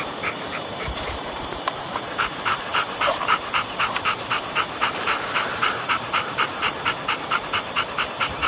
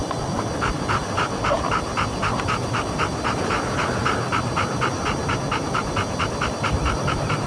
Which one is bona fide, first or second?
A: second